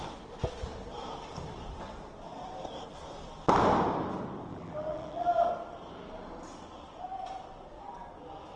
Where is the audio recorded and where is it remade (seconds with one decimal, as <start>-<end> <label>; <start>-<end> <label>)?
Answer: 0.0-4.5 recorded; 4.5-5.5 remade; 5.5-8.6 recorded